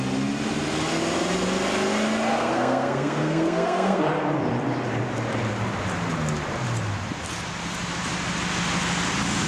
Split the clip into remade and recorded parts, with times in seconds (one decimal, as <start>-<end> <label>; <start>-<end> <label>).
0.0-2.3 recorded; 2.3-4.0 remade; 4.0-9.5 recorded